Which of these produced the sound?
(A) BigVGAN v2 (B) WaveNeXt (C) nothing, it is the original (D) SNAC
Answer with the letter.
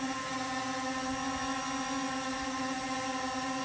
C